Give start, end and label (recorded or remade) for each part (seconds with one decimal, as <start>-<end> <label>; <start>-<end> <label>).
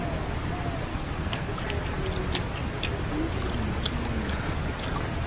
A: 0.0-0.9 recorded; 0.9-1.5 remade; 1.5-5.3 recorded